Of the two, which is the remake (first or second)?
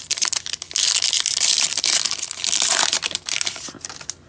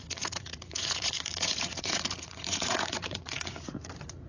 second